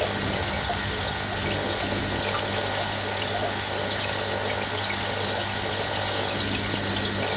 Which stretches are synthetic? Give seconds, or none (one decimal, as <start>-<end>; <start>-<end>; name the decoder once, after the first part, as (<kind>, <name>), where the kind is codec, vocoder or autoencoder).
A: none